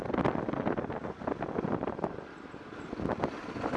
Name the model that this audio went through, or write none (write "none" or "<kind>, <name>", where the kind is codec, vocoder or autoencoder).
none